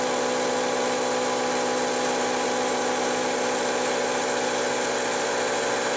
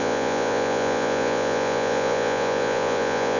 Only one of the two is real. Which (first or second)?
first